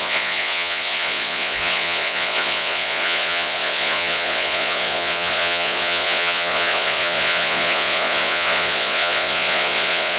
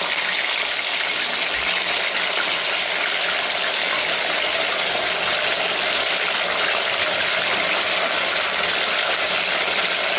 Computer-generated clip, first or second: first